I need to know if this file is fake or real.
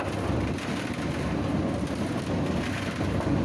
real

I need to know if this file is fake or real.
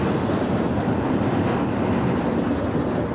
real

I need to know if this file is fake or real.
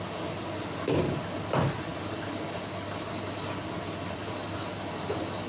real